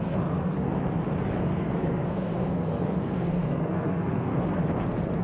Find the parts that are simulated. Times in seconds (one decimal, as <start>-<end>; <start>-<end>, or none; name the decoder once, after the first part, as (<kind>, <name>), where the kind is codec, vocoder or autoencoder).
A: 0.0-0.7 (codec, SNAC); 1.4-4.6